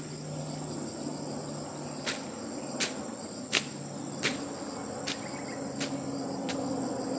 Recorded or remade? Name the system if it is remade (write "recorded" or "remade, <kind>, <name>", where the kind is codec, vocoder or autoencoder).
recorded